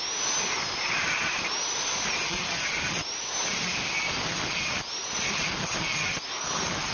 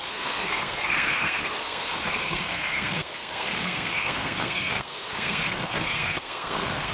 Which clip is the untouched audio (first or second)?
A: first